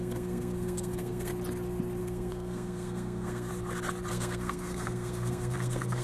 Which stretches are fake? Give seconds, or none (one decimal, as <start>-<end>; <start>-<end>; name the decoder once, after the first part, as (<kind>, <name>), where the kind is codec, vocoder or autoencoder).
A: 0.0-1.3 (codec, SNAC); 2.0-3.5; 4.1-6.0